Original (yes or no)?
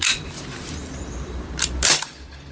no